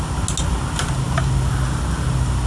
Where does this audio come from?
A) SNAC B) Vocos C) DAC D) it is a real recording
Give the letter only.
D